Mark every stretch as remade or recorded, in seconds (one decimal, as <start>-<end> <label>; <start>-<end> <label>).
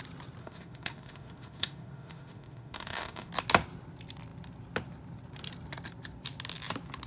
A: 0.0-0.4 recorded; 0.4-3.3 remade; 3.3-7.1 recorded